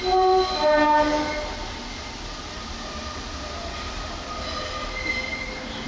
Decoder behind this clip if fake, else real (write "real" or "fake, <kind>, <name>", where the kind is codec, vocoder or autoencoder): real